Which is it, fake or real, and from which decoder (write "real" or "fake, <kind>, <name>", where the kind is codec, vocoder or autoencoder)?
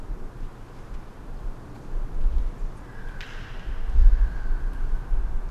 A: real